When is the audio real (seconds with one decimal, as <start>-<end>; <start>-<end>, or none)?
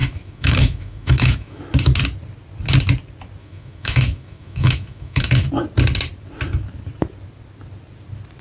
1.6-3.4; 5.5-8.4